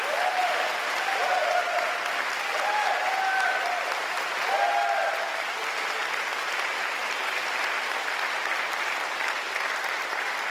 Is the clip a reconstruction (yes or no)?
no